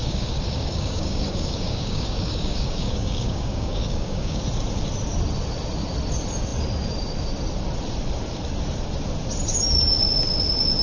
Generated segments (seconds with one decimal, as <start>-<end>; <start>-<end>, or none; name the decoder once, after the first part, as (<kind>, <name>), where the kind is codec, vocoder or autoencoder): 0.0-4.4 (codec, DAC)